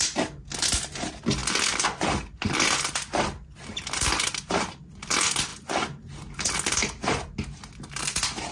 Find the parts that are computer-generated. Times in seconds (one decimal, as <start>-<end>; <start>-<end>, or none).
none